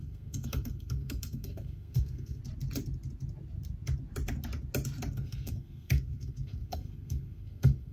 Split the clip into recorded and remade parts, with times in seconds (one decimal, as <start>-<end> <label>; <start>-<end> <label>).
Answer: 0.0-2.4 remade; 2.4-5.1 recorded; 5.1-7.9 remade